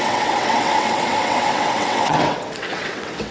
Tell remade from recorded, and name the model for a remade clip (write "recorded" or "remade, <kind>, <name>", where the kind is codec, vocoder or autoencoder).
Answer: remade, vocoder, WaveNeXt